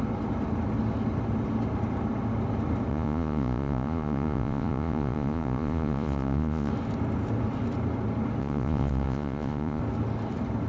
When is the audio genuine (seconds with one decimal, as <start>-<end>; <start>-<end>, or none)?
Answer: 0.0-2.9; 6.7-8.4; 9.8-10.7